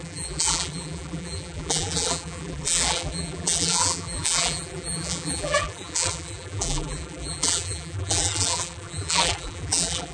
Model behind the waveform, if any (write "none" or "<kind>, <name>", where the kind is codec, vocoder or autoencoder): vocoder, BigVGAN v2